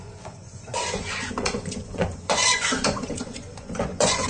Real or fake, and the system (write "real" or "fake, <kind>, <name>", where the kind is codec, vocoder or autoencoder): fake, vocoder, Vocos